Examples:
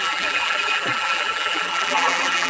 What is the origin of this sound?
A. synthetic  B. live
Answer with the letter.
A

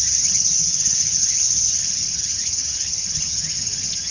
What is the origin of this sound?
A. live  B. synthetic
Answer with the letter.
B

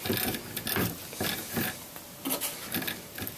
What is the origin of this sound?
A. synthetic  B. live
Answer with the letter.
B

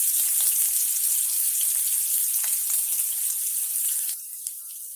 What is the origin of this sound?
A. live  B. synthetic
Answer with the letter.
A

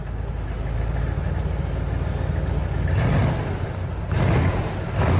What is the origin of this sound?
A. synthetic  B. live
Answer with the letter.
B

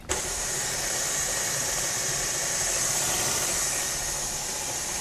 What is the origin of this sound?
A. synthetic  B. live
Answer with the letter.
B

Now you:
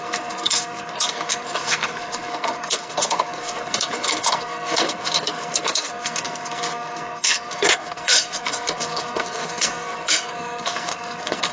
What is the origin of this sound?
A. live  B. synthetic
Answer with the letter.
B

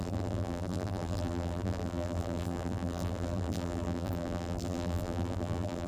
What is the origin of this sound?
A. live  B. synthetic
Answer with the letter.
B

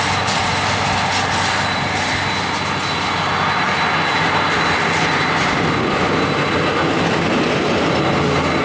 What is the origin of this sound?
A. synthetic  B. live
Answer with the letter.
B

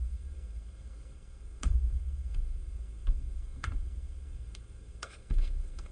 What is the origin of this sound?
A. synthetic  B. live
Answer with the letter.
A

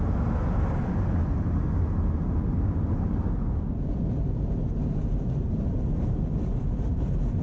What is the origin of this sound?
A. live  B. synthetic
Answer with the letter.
A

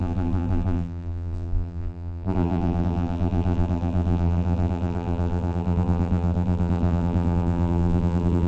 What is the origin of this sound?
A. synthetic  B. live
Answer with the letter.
A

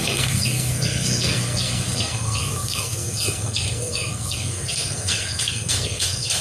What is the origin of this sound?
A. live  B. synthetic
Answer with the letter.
B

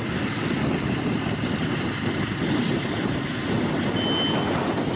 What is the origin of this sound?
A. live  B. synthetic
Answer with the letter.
A